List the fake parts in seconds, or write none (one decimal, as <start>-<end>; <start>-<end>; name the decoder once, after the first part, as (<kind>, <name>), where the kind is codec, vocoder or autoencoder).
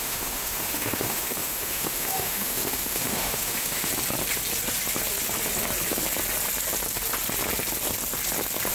0.0-3.9 (autoencoder, DAC-VAE)